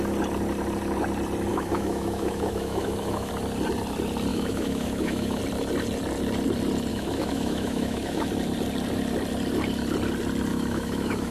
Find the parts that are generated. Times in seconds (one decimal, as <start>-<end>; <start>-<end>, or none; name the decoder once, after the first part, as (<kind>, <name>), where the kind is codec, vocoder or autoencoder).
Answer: 1.5-3.3 (autoencoder, DAC-VAE); 4.3-5.4; 6.9-8.3; 10.5-11.3